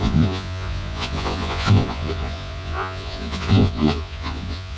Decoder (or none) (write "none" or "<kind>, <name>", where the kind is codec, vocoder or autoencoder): vocoder, Vocos